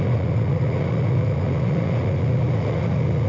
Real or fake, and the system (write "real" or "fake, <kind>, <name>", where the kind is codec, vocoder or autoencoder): fake, vocoder, Vocos